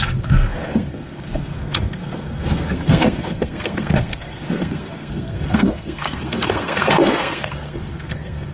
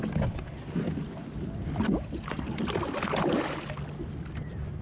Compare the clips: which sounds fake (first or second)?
first